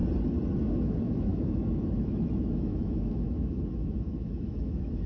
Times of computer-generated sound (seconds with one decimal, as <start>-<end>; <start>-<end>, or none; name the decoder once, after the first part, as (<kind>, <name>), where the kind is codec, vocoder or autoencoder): 0.6-5.1 (autoencoder, DAC-VAE)